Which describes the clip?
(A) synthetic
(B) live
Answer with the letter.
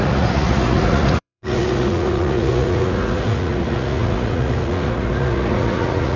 A